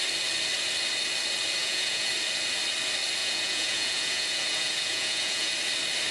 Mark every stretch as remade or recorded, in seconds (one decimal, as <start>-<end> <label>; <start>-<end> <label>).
0.0-1.6 recorded; 1.6-2.1 remade; 2.1-3.2 recorded; 3.2-5.5 remade; 5.5-6.1 recorded